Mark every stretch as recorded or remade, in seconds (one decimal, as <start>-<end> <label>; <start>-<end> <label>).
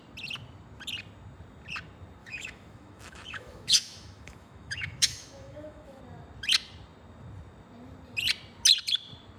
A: 0.0-2.2 recorded; 2.2-6.0 remade; 6.0-9.4 recorded